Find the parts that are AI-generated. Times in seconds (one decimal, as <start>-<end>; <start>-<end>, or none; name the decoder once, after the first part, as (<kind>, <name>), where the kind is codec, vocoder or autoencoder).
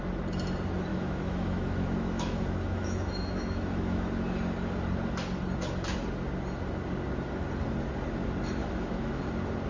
0.9-4.1 (autoencoder, DAC-VAE); 8.6-9.2